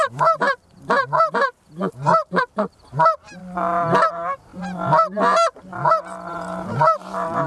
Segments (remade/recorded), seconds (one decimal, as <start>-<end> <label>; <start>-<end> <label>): 0.0-0.4 remade; 0.4-1.7 recorded; 1.7-2.2 remade; 2.2-2.9 recorded; 2.9-3.4 remade; 3.4-4.1 recorded; 4.1-7.5 remade